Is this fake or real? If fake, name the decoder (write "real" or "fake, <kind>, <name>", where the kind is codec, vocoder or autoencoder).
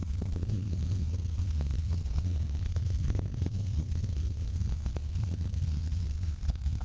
fake, codec, SNAC